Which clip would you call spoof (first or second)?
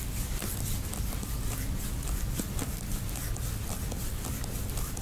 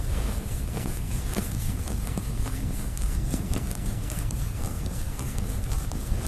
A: second